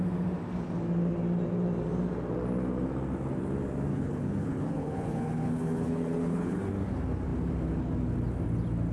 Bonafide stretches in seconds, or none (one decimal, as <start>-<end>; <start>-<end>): 0.0-3.9; 6.6-8.9